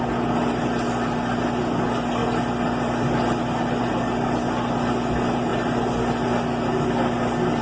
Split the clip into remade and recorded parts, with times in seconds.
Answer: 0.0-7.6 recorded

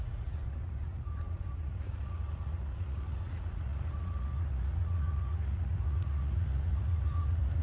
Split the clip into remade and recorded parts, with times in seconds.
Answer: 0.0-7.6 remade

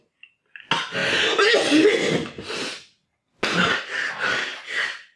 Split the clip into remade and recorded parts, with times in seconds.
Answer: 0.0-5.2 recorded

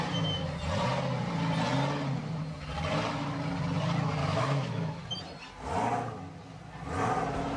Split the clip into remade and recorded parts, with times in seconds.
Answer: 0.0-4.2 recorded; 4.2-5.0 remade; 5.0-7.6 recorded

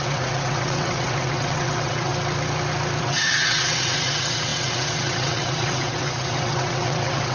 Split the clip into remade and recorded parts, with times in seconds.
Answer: 0.0-2.1 remade; 2.1-3.0 recorded; 3.0-7.3 remade

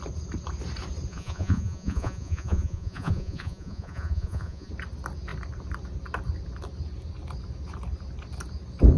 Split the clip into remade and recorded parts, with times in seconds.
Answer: 0.0-1.1 recorded; 1.1-4.7 remade; 4.7-9.0 recorded

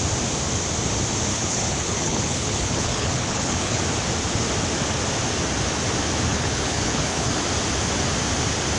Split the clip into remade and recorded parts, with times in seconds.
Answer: 0.0-1.3 recorded; 1.3-3.8 remade; 3.8-6.3 recorded; 6.3-7.3 remade; 7.3-8.8 recorded

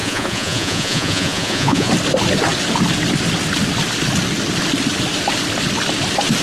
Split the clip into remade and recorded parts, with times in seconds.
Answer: 0.0-1.9 remade; 1.9-6.4 recorded